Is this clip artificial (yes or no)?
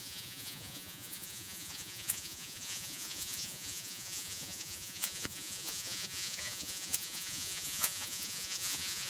yes